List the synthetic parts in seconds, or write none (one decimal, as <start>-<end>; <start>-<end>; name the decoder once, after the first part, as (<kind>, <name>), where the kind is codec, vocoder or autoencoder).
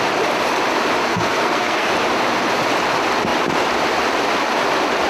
1.1-1.9 (codec, SNAC)